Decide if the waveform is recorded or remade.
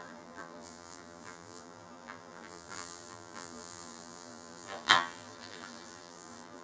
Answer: remade